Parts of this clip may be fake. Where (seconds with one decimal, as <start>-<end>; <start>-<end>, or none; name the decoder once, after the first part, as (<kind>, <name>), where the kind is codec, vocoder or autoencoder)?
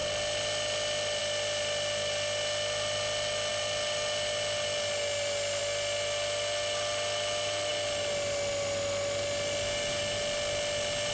none